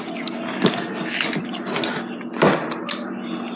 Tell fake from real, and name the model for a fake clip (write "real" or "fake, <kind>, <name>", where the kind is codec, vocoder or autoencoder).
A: real